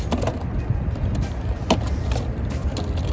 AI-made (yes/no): no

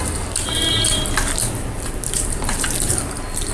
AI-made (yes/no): yes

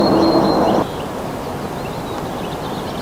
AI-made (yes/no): no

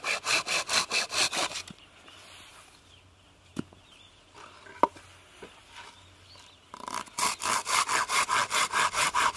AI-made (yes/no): no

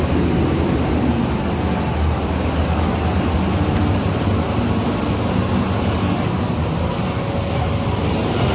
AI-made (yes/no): no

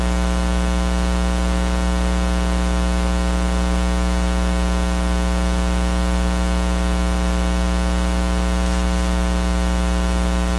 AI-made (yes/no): no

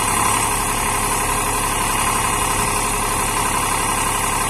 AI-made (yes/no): no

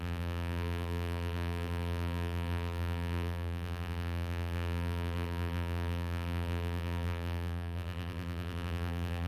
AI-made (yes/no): yes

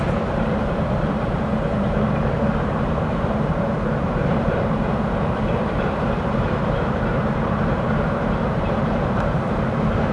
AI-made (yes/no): yes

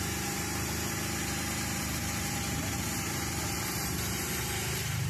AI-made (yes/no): yes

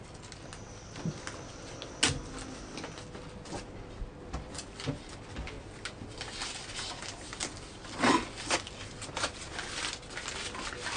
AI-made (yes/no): no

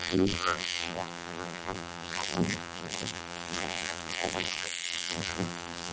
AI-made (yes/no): yes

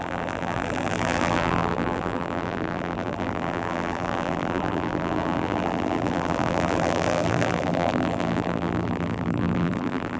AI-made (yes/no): yes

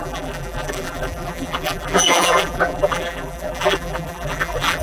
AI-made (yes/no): yes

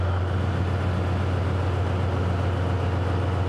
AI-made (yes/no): no